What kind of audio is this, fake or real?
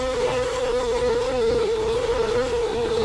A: fake